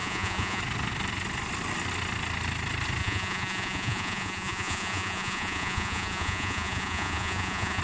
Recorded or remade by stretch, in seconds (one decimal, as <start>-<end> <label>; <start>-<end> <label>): 0.0-0.6 remade; 0.6-3.0 recorded; 3.0-7.8 remade